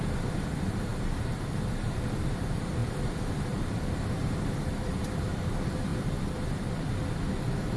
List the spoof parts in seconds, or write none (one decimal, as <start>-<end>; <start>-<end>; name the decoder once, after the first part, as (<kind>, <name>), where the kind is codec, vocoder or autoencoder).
0.0-5.9 (vocoder, BigVGAN v2); 6.7-7.8